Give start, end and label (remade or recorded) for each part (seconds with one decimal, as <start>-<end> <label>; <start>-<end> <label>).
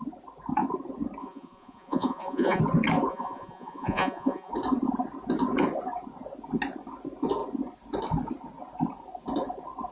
0.0-1.2 recorded; 1.2-2.6 remade; 2.6-3.1 recorded; 3.1-4.5 remade; 4.5-9.9 recorded